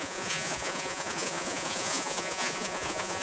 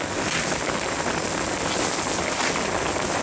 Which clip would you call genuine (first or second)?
second